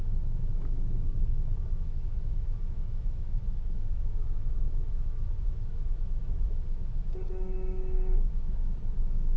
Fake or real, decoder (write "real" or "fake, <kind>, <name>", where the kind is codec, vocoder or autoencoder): fake, autoencoder, DAC-VAE